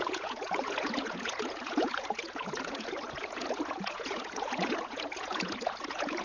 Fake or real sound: fake